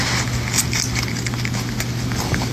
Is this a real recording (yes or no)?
yes